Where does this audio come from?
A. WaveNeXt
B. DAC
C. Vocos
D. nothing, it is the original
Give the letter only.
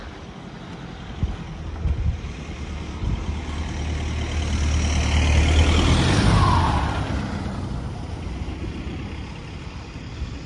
D